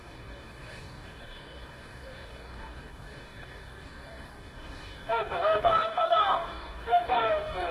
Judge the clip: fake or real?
fake